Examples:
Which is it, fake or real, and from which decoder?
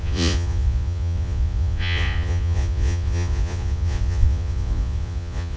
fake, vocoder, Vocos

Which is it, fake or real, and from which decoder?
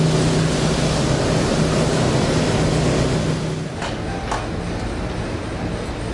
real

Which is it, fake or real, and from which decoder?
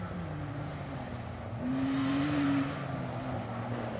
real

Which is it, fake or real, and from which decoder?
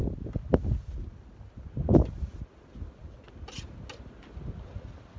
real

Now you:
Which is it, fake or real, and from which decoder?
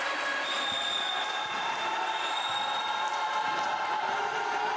real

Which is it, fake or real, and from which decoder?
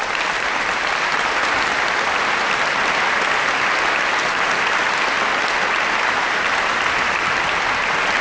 real